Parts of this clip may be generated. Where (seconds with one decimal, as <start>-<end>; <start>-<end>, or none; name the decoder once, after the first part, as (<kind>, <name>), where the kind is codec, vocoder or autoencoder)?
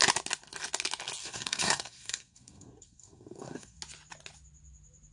1.2-3.8 (codec, SNAC)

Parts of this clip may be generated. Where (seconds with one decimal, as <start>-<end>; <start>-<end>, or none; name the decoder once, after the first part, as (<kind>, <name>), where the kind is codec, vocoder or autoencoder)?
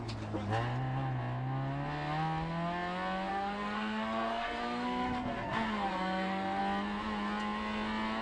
3.3-6.6 (codec, SNAC)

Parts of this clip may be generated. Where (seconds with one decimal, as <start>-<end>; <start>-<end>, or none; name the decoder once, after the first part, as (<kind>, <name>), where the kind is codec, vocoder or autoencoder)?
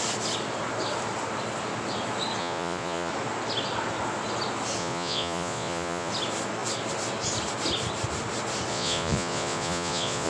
2.4-3.1 (vocoder, Vocos); 4.8-6.1; 8.7-10.3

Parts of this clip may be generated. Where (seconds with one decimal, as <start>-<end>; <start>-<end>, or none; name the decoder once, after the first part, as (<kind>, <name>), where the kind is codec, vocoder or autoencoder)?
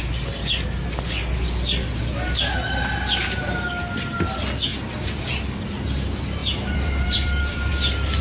6.4-7.7 (vocoder, BigVGAN v2)